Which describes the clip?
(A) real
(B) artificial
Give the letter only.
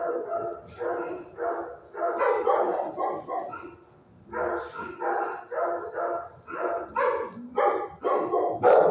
A